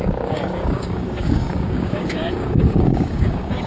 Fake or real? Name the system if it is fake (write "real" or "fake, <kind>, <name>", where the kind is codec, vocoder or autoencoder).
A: fake, codec, DAC